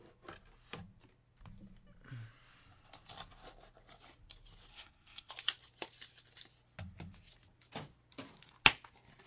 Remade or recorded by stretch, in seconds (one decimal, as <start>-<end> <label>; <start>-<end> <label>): 0.0-4.7 recorded; 4.7-5.3 remade; 5.3-9.3 recorded